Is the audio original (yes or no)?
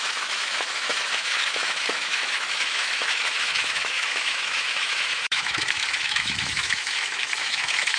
no